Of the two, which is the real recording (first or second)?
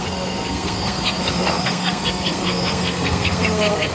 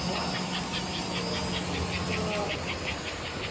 second